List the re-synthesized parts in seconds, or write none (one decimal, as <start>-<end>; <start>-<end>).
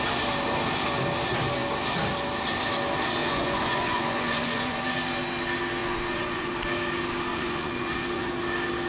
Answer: 3.2-4.8; 5.8-6.5; 7.3-8.3